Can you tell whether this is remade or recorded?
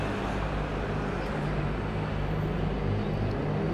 recorded